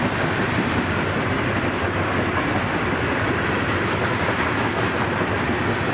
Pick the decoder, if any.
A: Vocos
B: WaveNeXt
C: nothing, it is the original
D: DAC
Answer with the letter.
C